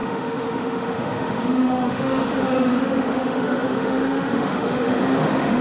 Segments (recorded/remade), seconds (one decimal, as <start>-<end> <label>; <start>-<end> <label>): 0.0-5.6 remade